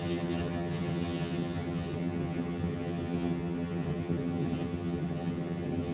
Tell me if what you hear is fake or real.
fake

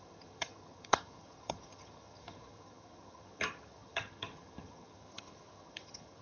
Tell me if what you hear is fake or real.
fake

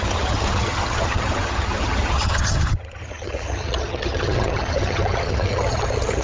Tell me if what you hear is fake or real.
fake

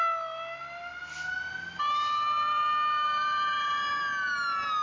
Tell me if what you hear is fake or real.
real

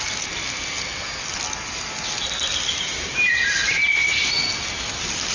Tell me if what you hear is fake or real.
real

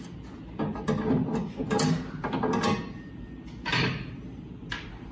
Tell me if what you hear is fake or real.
real